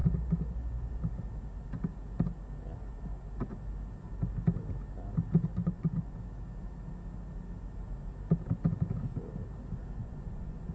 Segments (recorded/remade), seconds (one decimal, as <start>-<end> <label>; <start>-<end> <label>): 0.0-5.6 recorded; 5.6-6.2 remade; 6.2-10.0 recorded; 10.0-10.7 remade